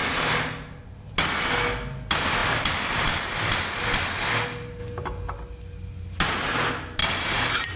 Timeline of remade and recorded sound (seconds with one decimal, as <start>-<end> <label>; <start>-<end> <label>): 0.0-0.8 remade; 0.8-2.4 recorded; 2.4-3.0 remade; 3.0-7.0 recorded; 7.0-7.8 remade